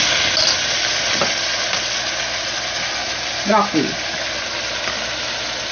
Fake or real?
real